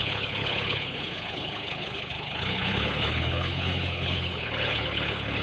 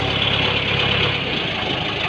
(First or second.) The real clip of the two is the second